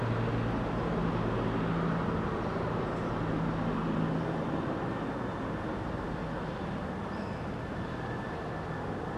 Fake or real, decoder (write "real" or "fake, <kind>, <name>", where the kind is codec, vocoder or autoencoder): real